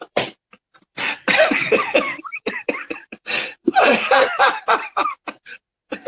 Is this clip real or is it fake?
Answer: fake